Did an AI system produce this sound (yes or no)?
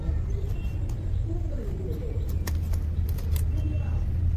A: no